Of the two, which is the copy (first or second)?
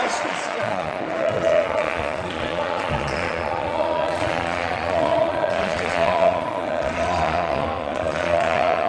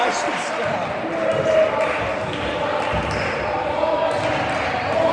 first